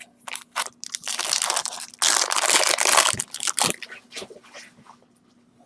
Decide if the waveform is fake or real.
real